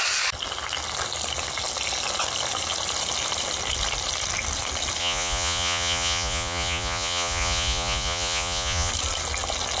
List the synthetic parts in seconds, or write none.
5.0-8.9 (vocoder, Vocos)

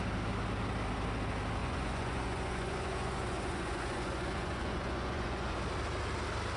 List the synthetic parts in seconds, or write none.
1.6-5.6 (vocoder, Vocos)

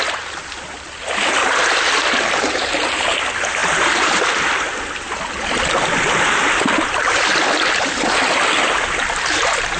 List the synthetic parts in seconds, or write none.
none

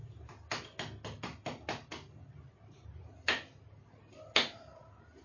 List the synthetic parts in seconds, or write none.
none

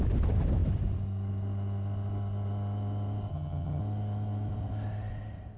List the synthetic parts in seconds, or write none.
3.3-3.8 (vocoder, HiFi-GAN)

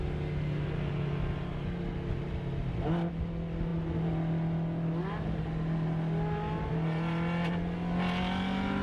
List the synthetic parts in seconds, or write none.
none

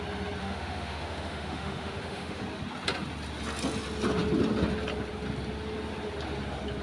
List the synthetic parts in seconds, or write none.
0.4-2.4 (autoencoder, DAC-VAE)